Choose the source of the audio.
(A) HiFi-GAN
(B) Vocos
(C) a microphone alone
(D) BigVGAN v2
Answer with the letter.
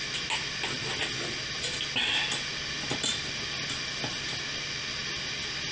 C